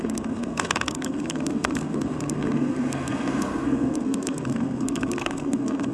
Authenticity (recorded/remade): remade